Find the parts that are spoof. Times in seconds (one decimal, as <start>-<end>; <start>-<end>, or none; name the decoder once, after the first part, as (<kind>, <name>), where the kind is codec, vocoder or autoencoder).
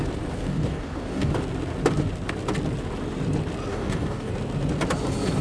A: 0.5-1.3 (codec, DAC); 3.7-4.3